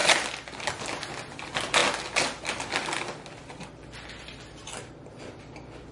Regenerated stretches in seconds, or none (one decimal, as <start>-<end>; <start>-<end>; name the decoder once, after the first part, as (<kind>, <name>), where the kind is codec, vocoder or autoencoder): none